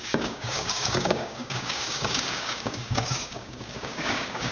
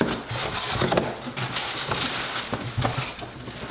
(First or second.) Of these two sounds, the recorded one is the second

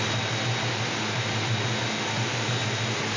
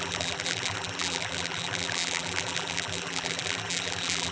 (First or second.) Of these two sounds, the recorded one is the first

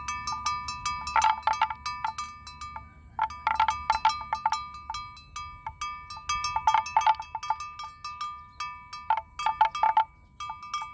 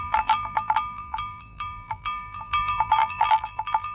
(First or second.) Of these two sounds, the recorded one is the first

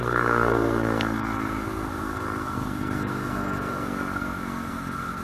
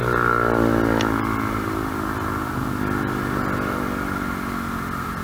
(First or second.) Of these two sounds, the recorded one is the second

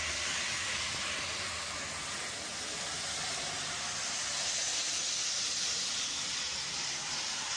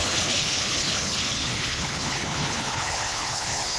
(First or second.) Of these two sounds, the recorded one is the first